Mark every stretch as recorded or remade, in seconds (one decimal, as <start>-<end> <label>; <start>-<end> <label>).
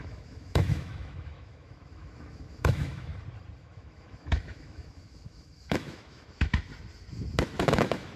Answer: 0.0-3.1 remade; 3.1-3.6 recorded; 3.6-6.7 remade; 6.7-7.6 recorded; 7.6-8.2 remade